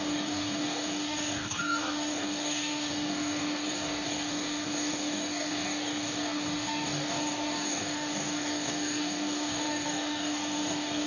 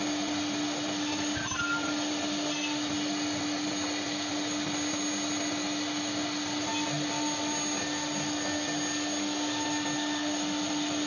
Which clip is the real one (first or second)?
second